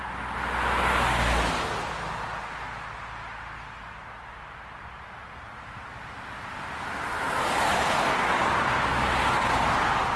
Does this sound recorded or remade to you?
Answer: recorded